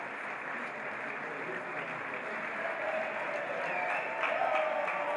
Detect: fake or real real